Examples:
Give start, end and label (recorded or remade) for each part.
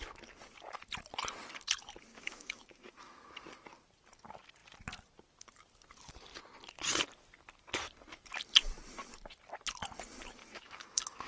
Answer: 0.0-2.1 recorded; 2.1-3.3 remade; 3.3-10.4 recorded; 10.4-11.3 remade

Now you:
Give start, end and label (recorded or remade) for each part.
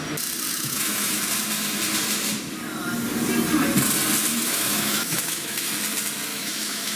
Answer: 0.0-0.5 recorded; 0.5-1.2 remade; 1.2-4.3 recorded; 4.3-5.7 remade; 5.7-6.3 recorded; 6.3-7.0 remade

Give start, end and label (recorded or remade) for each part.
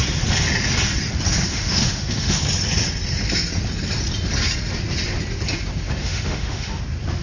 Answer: 0.0-1.5 recorded; 1.5-2.4 remade; 2.4-6.0 recorded; 6.0-6.8 remade; 6.8-7.2 recorded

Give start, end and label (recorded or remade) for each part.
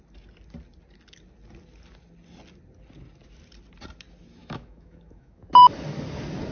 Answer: 0.0-4.4 recorded; 4.4-5.7 remade; 5.7-6.5 recorded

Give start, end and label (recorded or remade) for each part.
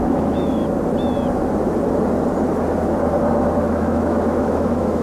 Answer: 0.0-0.6 remade; 0.6-3.6 recorded; 3.6-5.0 remade